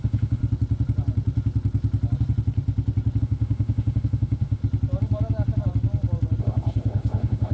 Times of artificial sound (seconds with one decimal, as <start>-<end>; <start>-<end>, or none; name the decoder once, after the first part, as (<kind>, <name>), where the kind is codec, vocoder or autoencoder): 0.0-0.4 (autoencoder, DAC-VAE); 3.2-4.6; 6.4-7.5